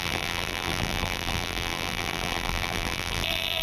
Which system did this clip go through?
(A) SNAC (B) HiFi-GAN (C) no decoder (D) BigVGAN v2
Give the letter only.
D